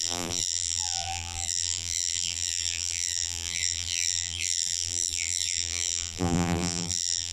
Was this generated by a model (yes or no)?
yes